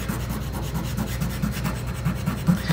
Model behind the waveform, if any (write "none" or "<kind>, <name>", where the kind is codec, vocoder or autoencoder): none